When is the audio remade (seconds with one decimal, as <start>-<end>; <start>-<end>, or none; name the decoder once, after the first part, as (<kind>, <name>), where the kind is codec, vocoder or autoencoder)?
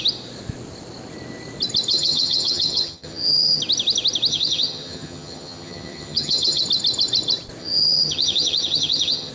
1.9-3.6 (vocoder, HiFi-GAN); 4.3-6.6; 7.6-9.3